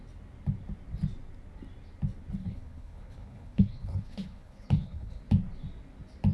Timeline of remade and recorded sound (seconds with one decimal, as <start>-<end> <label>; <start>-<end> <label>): 0.0-2.4 recorded; 2.4-5.2 remade; 5.2-6.3 recorded